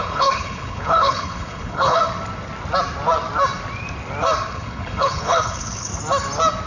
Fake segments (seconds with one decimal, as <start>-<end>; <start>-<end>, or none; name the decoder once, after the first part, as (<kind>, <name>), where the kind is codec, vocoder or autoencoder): 0.0-2.0 (codec, HILCodec); 4.5-5.9